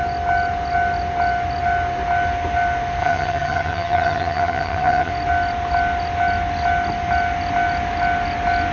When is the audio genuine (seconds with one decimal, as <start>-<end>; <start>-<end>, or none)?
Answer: 0.0-3.0; 5.1-8.7